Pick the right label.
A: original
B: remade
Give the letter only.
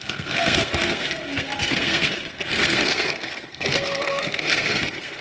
B